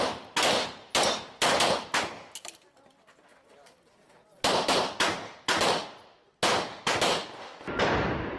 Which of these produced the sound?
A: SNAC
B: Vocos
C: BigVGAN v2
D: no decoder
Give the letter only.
D